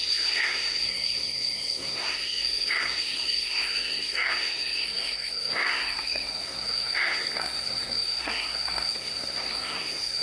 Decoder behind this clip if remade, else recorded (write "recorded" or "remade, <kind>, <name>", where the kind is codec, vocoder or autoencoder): remade, codec, SNAC